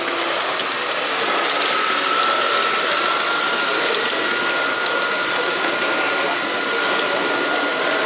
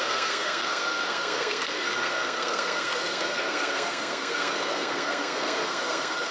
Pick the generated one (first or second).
second